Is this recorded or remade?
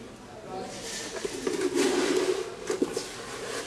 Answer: recorded